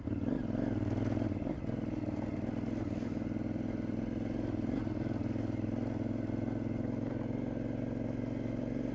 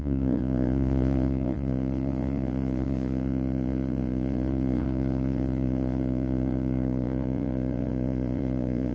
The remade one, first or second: second